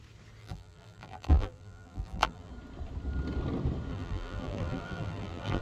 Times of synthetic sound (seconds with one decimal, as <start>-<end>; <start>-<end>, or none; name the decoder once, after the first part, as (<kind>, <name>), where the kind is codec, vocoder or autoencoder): 0.4-2.5 (vocoder, BigVGAN v2); 3.9-5.6